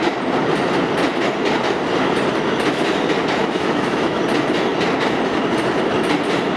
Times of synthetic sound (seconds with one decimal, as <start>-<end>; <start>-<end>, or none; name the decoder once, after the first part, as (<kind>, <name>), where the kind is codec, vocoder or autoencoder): 3.4-4.2 (autoencoder, DAC-VAE)